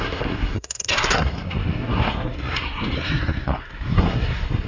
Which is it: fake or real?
fake